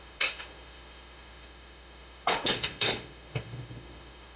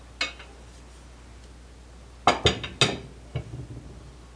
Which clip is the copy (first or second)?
first